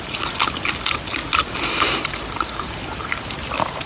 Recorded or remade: recorded